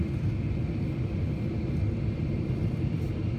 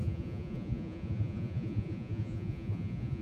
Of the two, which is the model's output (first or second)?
second